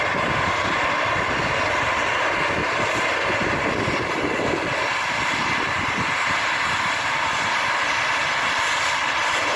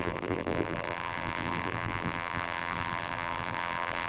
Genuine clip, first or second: first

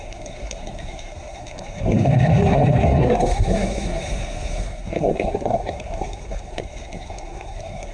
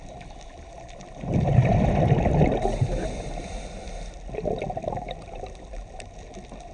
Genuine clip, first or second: second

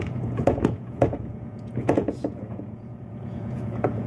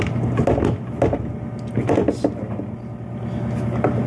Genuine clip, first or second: second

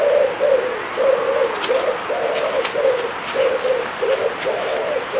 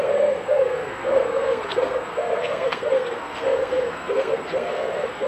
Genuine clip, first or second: first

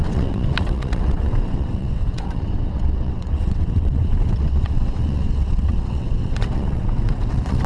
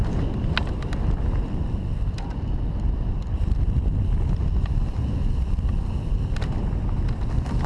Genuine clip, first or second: second